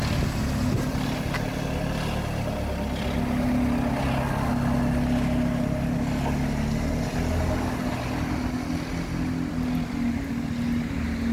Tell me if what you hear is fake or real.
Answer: real